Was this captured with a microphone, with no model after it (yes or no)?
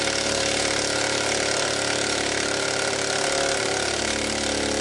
yes